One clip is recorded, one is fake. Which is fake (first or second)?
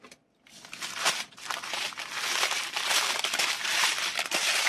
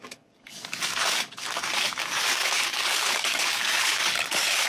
second